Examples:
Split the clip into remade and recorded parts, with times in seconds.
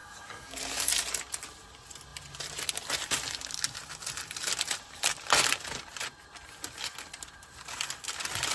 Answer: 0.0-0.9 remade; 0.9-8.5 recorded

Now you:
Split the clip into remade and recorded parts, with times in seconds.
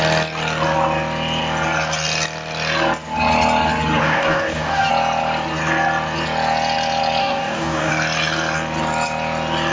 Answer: 0.0-4.0 recorded; 4.0-4.9 remade; 4.9-7.2 recorded; 7.2-7.9 remade; 7.9-9.7 recorded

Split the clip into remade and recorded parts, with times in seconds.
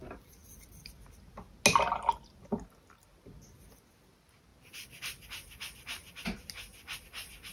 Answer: 0.0-7.5 recorded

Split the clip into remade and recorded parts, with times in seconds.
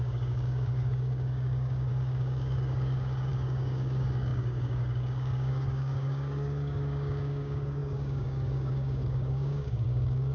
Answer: 0.0-10.3 remade